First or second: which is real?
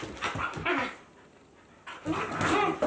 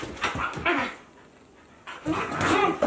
first